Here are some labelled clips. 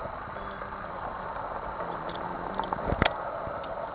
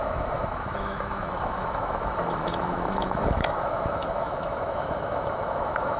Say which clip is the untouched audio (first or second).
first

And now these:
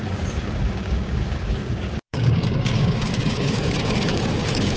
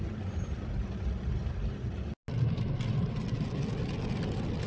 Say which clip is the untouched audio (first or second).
second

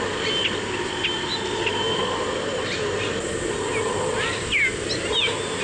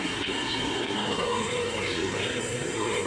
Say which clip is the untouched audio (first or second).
first